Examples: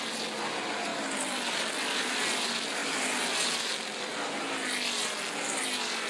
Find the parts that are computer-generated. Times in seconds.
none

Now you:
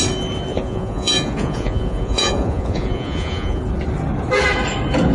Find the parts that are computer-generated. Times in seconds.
0.5-3.6 (vocoder, Vocos)

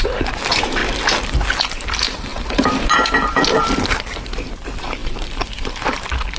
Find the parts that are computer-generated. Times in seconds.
0.0-0.8 (vocoder, BigVGAN v2); 1.7-6.4